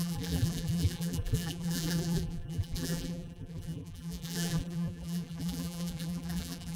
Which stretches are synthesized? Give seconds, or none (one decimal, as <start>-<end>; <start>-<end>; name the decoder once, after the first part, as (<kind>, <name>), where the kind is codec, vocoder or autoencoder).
0.0-6.8 (vocoder, BigVGAN v2)